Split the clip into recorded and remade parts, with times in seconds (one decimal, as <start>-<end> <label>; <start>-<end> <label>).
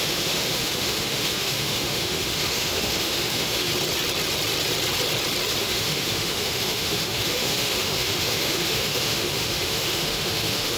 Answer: 0.0-3.7 remade; 3.7-5.6 recorded; 5.6-10.8 remade